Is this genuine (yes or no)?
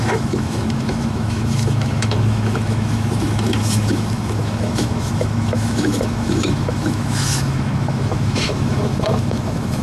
no